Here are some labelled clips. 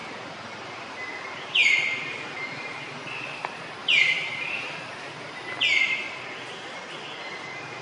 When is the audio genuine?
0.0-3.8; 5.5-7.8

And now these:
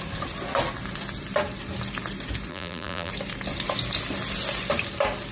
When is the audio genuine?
0.0-2.5; 3.1-5.3

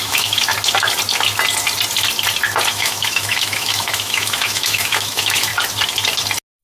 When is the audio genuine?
0.5-2.7; 5.5-6.6

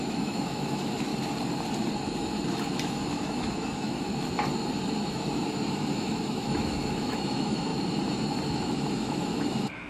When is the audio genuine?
1.1-2.5; 4.1-5.1; 7.7-8.5

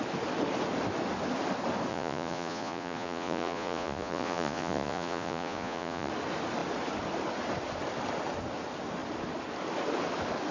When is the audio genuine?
0.0-1.9; 6.1-10.5

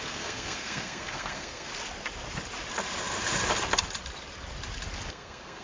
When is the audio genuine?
1.7-5.1

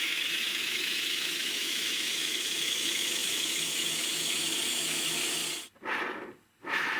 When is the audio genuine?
5.4-6.6

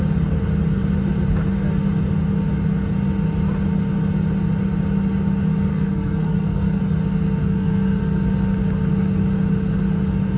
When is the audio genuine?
0.0-5.7; 6.8-7.4; 8.0-10.4